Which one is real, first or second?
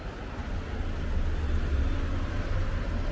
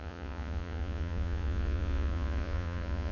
first